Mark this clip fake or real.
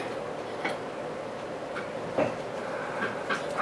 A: real